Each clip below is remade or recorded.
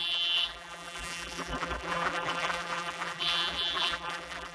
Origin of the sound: remade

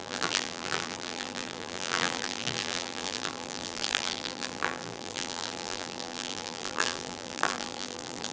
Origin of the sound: remade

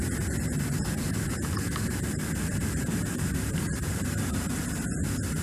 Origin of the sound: remade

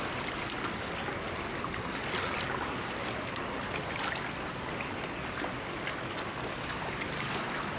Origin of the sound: recorded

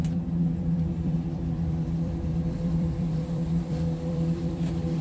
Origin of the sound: remade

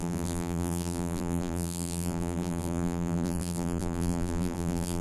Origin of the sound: remade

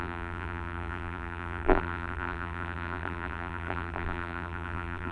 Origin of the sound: remade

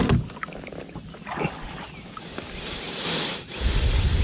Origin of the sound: recorded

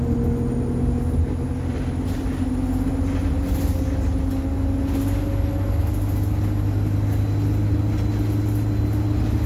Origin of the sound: recorded